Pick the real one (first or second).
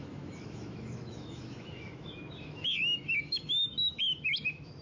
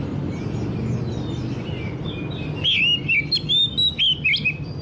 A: second